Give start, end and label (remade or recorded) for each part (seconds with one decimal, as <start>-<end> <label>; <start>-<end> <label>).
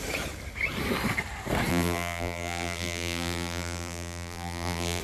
0.0-1.7 recorded; 1.7-5.0 remade